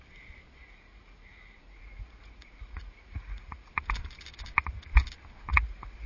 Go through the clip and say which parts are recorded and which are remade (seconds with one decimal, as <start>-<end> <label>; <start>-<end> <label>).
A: 0.0-0.6 recorded; 0.6-3.7 remade; 3.7-5.5 recorded; 5.5-6.1 remade